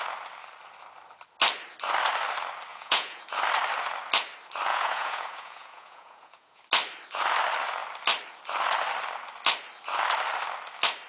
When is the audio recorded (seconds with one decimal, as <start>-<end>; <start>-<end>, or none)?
0.0-2.7; 3.2-4.7; 6.6-11.1